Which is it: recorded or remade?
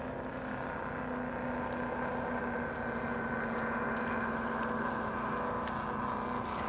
recorded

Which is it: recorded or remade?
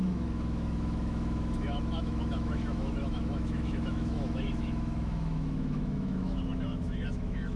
remade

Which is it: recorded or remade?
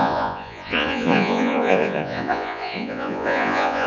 remade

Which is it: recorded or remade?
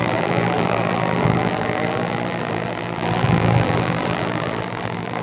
remade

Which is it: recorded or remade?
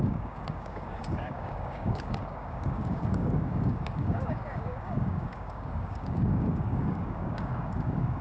remade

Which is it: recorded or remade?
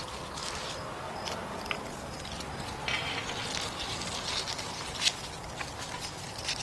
recorded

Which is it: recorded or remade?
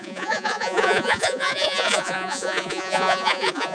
remade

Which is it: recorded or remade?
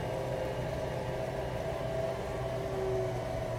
recorded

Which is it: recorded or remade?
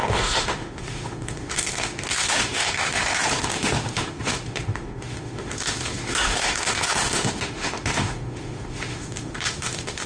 remade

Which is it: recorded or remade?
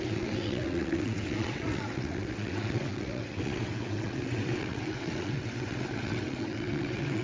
remade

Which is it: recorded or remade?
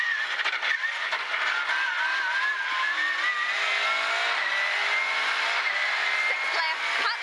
recorded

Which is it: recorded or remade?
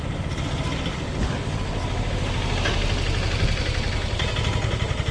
recorded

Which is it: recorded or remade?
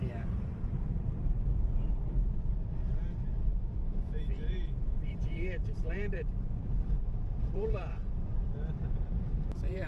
remade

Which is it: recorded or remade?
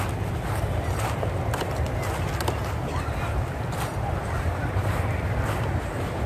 recorded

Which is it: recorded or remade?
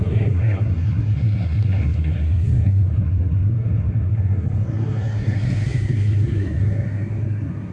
remade